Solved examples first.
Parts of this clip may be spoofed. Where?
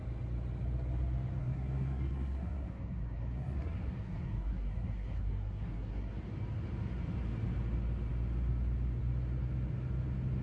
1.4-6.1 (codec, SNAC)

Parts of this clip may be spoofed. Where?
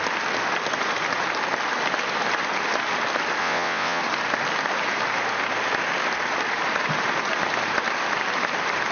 3.4-4.0 (vocoder, WaveNeXt)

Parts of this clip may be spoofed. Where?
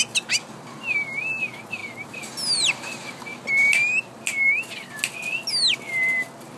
none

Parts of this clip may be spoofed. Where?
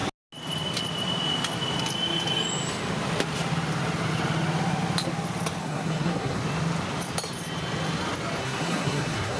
5.6-6.4 (codec, SNAC); 8.4-9.4